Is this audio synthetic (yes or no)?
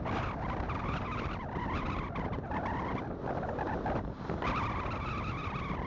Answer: no